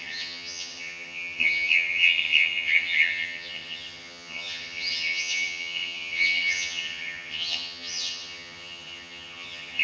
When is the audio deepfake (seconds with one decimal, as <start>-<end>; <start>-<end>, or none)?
0.0-9.8